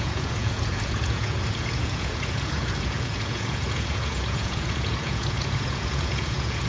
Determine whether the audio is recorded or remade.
remade